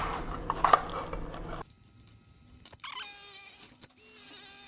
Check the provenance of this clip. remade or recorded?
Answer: recorded